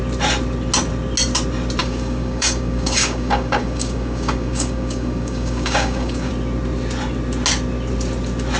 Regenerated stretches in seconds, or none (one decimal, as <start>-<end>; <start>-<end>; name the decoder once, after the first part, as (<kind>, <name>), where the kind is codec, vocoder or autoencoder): 1.8-6.3 (codec, DAC)